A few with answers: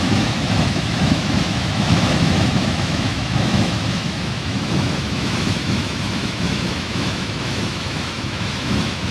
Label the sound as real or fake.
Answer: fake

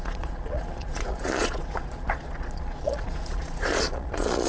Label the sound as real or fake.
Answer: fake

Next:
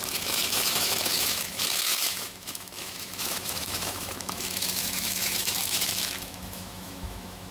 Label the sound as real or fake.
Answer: fake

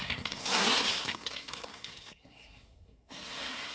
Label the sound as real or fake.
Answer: fake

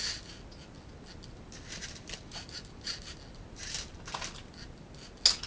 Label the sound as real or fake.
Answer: real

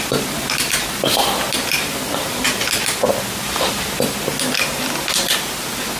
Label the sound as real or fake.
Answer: real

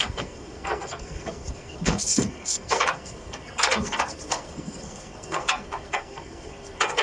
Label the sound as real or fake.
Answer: fake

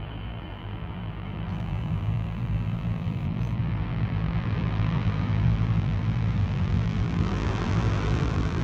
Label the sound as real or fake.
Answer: fake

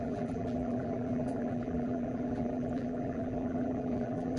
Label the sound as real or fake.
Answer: fake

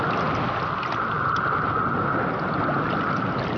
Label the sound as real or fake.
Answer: real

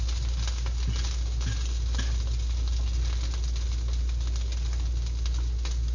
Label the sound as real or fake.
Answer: real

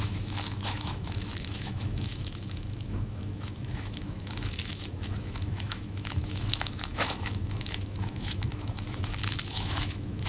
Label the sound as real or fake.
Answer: fake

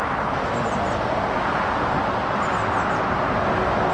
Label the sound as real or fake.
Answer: real